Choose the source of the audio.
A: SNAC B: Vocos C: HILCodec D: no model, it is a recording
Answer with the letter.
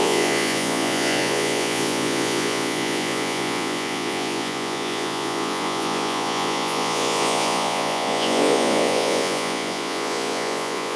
B